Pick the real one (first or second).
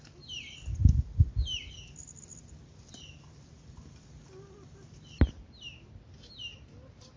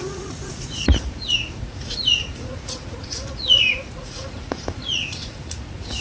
first